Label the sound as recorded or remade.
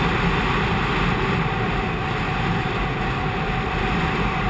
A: recorded